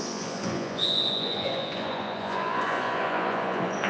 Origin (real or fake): fake